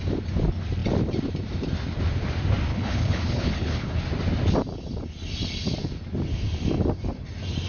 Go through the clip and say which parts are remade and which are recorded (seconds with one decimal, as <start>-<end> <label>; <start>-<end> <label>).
0.0-2.7 recorded; 2.7-4.0 remade; 4.0-7.7 recorded